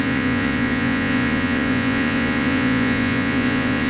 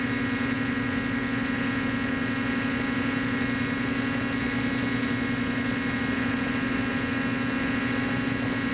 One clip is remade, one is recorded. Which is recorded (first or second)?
second